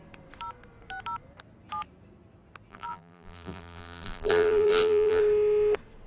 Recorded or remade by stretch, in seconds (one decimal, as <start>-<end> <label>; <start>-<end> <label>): 0.0-2.7 recorded; 2.7-5.2 remade; 5.2-6.1 recorded